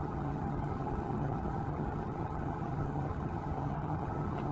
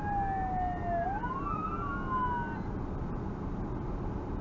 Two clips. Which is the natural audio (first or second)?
second